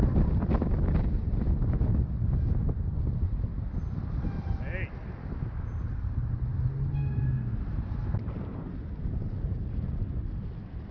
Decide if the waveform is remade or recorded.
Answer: recorded